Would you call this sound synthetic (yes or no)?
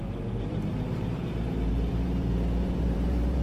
yes